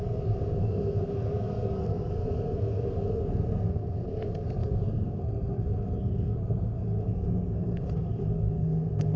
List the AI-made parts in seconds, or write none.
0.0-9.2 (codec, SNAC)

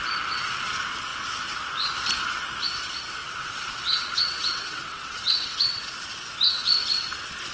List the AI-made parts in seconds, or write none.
3.2-5.9 (vocoder, WaveNeXt)

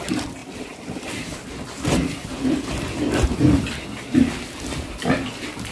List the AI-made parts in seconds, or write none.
0.4-3.8 (vocoder, BigVGAN v2)